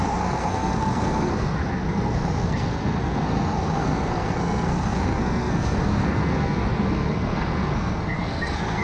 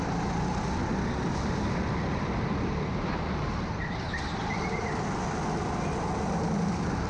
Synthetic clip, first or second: first